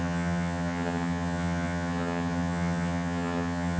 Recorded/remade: remade